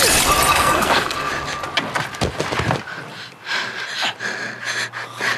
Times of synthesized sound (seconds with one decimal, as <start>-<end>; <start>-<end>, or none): 0.5-1.3